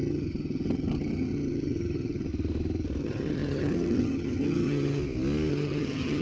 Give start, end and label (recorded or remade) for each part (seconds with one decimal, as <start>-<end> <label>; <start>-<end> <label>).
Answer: 0.0-2.3 remade; 2.3-3.0 recorded; 3.0-5.0 remade; 5.0-5.5 recorded; 5.5-6.2 remade